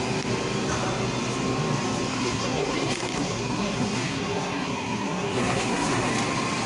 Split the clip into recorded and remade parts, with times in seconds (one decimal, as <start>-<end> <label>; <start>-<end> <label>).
0.0-2.1 recorded; 2.1-6.1 remade; 6.1-6.7 recorded